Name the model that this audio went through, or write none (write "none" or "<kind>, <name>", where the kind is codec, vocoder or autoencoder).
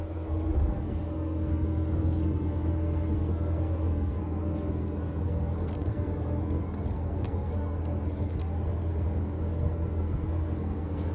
codec, SNAC